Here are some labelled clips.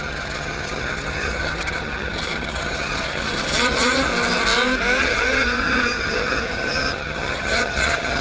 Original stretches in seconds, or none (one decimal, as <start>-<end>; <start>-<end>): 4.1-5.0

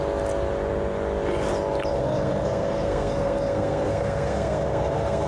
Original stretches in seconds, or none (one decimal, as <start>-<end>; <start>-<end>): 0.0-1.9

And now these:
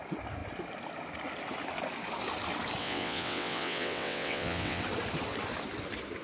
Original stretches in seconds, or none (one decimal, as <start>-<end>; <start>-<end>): 0.0-2.8; 4.8-6.2

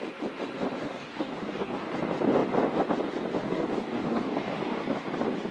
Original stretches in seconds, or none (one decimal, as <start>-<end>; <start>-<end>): 0.0-0.8; 1.9-3.4; 4.8-5.5